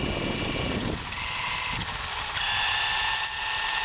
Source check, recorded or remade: recorded